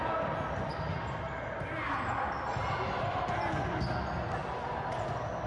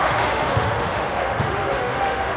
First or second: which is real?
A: first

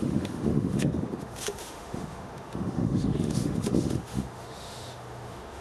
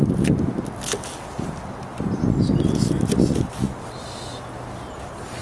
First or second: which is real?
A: second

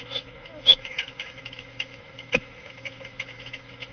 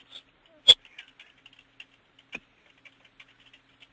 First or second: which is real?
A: second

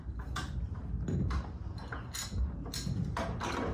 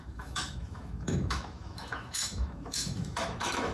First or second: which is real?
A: first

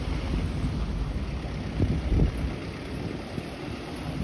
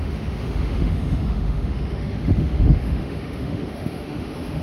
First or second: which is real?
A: first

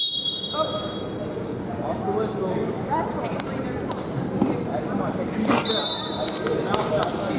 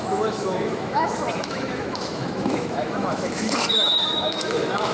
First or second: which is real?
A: first